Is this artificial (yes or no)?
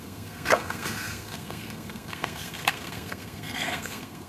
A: yes